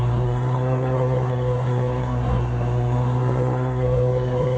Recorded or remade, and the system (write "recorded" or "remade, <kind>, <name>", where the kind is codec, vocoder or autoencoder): remade, codec, SNAC